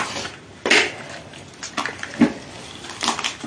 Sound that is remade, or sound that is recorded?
recorded